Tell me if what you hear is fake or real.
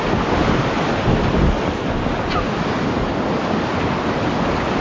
real